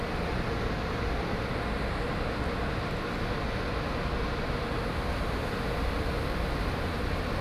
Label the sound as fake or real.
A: real